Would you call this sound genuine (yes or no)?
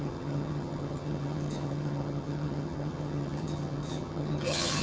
no